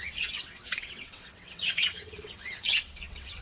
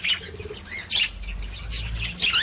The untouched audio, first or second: second